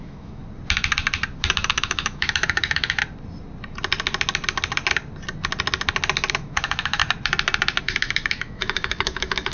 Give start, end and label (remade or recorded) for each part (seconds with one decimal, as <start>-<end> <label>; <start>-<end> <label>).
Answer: 0.0-0.4 remade; 0.4-1.7 recorded; 1.7-3.0 remade; 3.0-6.3 recorded; 6.3-7.0 remade; 7.0-7.8 recorded; 7.8-9.5 remade